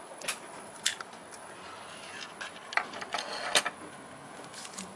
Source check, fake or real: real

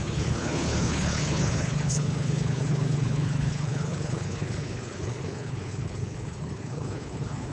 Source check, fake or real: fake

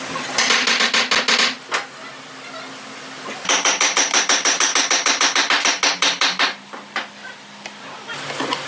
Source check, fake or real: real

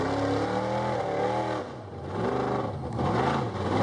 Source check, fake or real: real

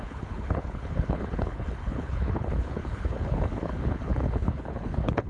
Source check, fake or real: fake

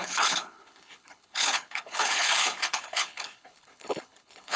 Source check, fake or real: fake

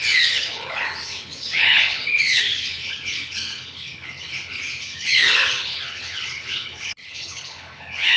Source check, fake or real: fake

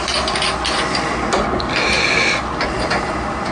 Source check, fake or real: real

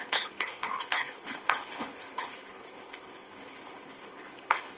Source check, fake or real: fake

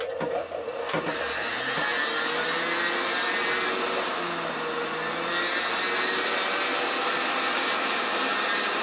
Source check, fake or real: real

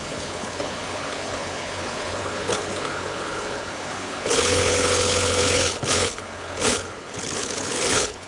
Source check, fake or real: fake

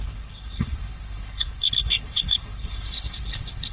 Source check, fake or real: fake